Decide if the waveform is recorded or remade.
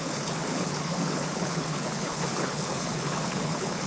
remade